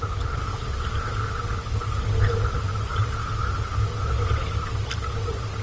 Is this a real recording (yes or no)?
yes